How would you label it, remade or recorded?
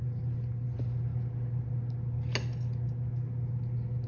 recorded